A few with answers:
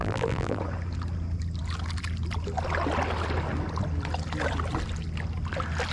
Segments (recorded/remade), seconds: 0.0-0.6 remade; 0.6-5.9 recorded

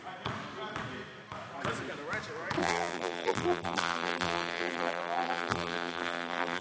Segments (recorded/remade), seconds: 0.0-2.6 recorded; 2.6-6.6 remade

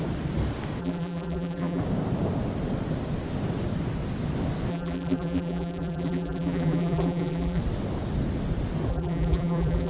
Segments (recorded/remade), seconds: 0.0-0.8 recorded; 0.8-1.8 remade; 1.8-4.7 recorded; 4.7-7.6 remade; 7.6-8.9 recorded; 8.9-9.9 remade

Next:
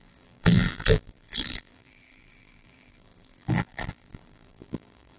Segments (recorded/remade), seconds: 0.0-5.2 remade

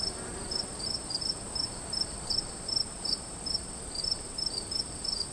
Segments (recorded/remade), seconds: 0.0-5.3 remade